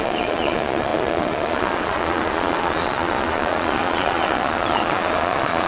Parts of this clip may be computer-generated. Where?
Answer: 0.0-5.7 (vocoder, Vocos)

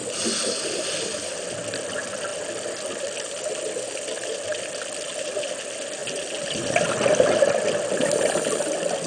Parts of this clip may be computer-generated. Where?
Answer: none

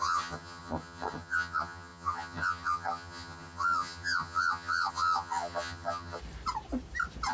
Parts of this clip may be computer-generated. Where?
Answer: 0.0-6.2 (vocoder, HiFi-GAN)

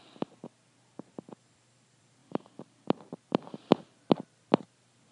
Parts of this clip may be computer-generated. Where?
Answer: 0.0-5.1 (vocoder, BigVGAN v2)

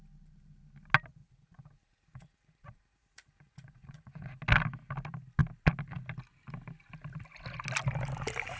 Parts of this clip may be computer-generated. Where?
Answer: 1.2-4.4 (vocoder, Vocos)